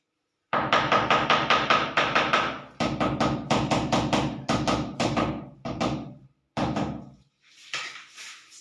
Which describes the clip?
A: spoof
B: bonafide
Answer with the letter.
A